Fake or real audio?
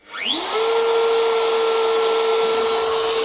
real